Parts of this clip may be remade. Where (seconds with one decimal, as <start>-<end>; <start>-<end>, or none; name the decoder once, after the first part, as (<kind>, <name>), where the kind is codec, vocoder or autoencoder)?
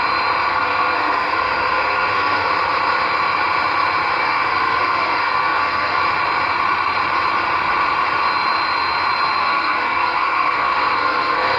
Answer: 0.5-2.5 (codec, SNAC); 4.2-6.0; 9.4-11.6